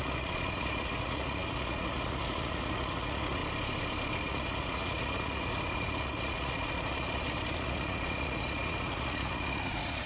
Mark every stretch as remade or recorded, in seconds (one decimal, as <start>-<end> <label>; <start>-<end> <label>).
0.0-3.4 remade; 3.4-4.2 recorded; 4.2-10.1 remade